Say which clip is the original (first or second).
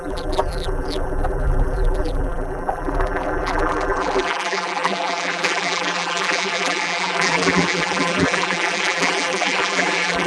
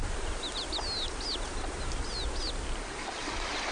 second